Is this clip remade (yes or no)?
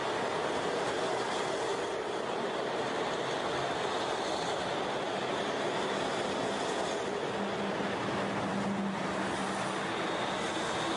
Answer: no